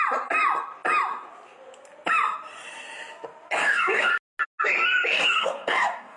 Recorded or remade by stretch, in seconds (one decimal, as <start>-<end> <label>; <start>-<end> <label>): 0.0-3.6 recorded; 3.6-4.1 remade; 4.1-5.1 recorded; 5.1-6.2 remade